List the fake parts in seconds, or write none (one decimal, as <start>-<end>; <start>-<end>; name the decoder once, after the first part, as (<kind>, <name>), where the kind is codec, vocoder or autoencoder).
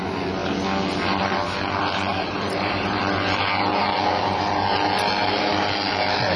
2.1-3.0 (vocoder, BigVGAN v2)